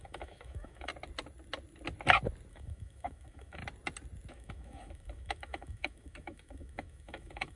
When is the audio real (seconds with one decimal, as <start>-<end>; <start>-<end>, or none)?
0.9-2.5; 3.6-4.3